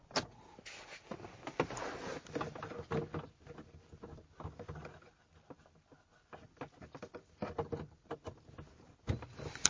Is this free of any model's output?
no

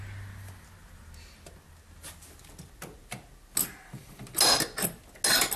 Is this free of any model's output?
yes